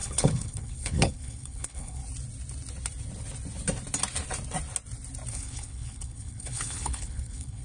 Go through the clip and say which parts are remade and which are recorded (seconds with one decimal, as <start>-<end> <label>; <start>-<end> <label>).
0.0-2.0 remade; 2.0-5.3 recorded; 5.3-7.6 remade